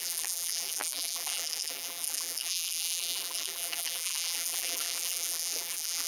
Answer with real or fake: fake